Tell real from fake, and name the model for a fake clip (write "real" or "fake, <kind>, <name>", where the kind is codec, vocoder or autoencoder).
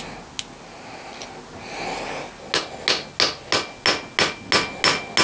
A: real